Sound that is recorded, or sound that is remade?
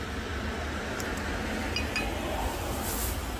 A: recorded